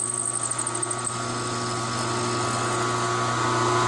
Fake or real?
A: real